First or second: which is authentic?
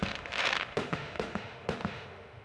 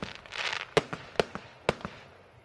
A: second